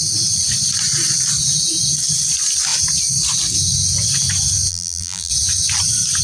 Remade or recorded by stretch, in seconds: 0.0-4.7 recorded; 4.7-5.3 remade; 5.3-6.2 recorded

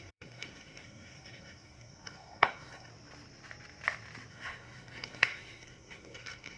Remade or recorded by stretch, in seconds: 0.0-2.9 remade; 2.9-4.3 recorded; 4.3-6.6 remade

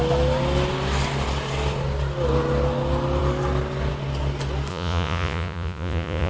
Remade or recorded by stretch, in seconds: 0.0-4.7 recorded; 4.7-6.3 remade